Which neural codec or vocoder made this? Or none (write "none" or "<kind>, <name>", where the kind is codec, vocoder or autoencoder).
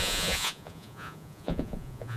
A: vocoder, Vocos